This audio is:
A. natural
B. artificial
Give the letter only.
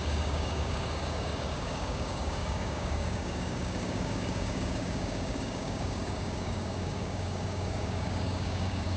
B